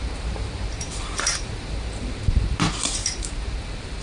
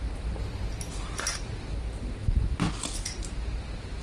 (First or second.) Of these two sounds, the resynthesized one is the first